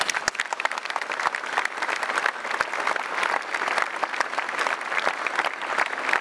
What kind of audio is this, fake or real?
real